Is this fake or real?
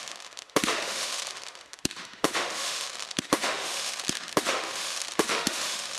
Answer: fake